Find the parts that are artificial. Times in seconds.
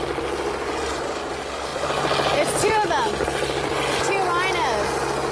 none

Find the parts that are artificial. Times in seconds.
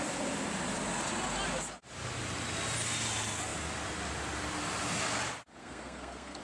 5.6-6.4 (codec, SNAC)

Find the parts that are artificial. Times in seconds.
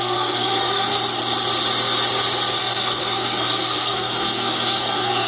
0.0-0.9 (codec, SNAC); 2.6-5.3